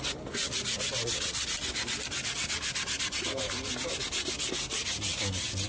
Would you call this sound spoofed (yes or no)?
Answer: no